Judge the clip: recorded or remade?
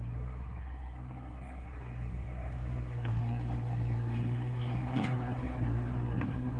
remade